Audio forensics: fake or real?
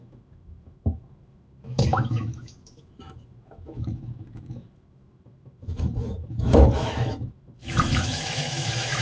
fake